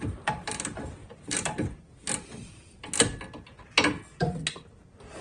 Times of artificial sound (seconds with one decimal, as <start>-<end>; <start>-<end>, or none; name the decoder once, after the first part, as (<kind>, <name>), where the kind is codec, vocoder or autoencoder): 1.0-2.0 (vocoder, BigVGAN v2)